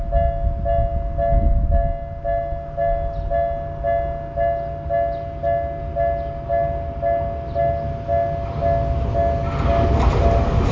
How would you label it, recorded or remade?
recorded